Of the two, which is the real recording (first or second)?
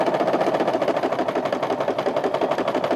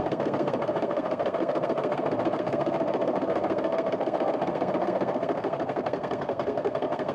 first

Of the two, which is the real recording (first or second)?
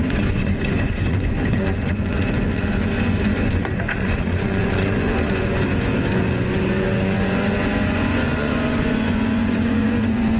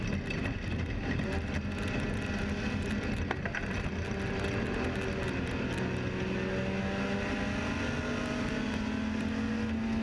second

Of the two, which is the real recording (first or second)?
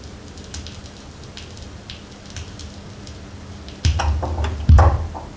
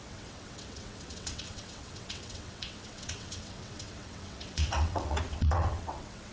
first